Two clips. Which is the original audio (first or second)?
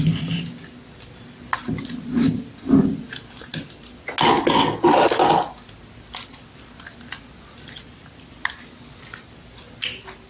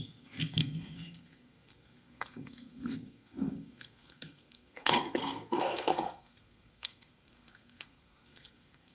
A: first